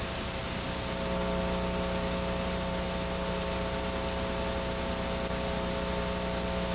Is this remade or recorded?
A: recorded